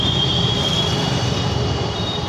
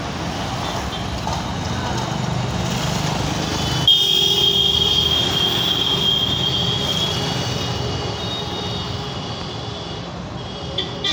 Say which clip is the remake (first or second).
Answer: first